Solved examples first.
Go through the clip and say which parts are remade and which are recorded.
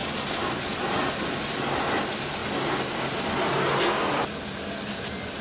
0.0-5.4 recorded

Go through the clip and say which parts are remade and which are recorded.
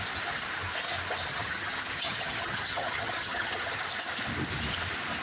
0.0-1.3 recorded; 1.3-3.8 remade; 3.8-5.2 recorded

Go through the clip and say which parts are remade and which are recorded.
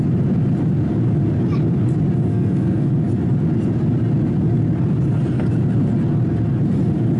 0.0-2.3 recorded; 2.3-2.9 remade; 2.9-7.2 recorded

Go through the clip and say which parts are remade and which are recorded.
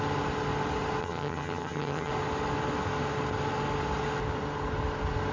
0.0-1.0 recorded; 1.0-2.1 remade; 2.1-5.3 recorded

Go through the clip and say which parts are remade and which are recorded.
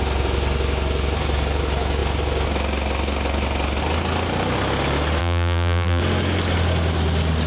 0.0-5.2 recorded; 5.2-6.0 remade; 6.0-7.5 recorded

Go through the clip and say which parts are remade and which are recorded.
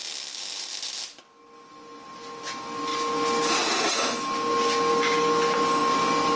0.0-6.4 recorded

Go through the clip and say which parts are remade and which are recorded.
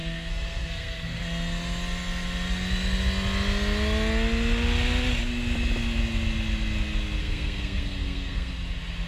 0.0-1.2 remade; 1.2-7.2 recorded; 7.2-8.5 remade; 8.5-9.1 recorded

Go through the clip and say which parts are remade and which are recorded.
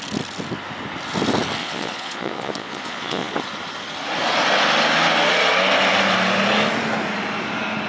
0.0-1.6 recorded; 1.6-3.3 remade; 3.3-7.9 recorded